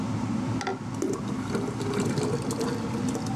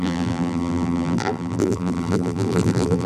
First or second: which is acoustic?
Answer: first